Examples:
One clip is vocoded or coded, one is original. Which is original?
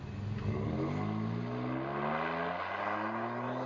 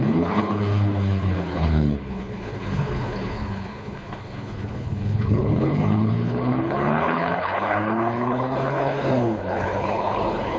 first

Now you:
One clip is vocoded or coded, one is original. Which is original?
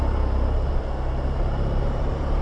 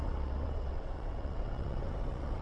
first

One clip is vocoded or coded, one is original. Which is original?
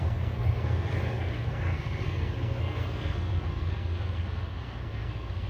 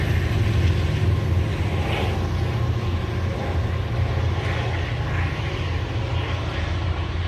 second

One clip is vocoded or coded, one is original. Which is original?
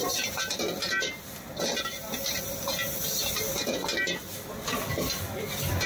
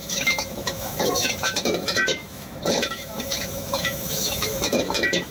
first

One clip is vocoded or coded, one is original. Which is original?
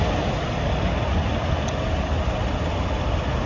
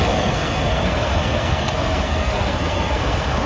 first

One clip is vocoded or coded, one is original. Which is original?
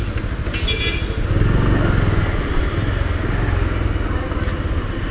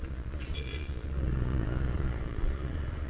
first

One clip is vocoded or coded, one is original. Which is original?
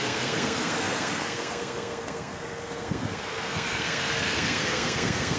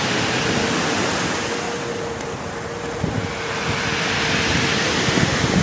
second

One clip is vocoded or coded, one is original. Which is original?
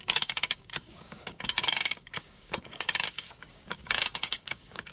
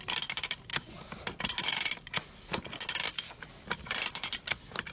second